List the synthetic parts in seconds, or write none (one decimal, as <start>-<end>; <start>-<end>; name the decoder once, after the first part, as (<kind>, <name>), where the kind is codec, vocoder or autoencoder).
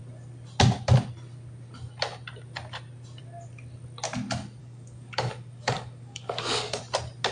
4.6-6.8 (codec, DAC)